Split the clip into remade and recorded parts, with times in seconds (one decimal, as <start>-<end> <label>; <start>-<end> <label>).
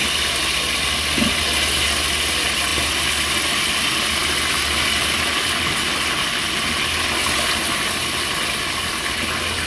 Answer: 0.0-9.7 recorded